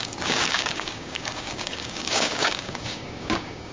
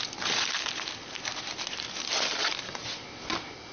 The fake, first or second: first